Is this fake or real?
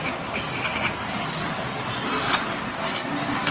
real